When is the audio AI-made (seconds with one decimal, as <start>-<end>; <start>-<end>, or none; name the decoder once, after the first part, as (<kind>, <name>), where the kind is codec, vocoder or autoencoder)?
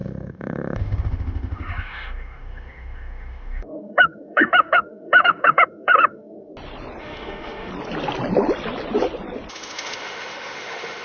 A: 0.0-6.5 (autoencoder, DAC-VAE); 7.0-7.7; 9.5-11.0